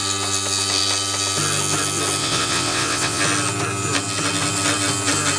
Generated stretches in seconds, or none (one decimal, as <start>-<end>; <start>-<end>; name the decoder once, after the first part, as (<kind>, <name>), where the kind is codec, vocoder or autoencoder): 2.2-3.2 (vocoder, WaveNeXt)